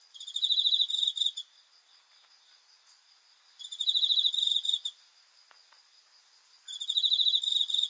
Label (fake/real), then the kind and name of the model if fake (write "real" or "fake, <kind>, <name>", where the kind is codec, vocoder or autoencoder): real